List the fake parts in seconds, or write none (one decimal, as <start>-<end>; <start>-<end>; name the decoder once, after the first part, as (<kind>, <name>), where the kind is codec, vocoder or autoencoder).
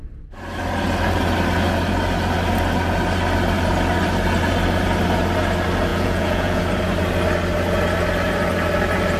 5.9-6.6 (vocoder, Vocos)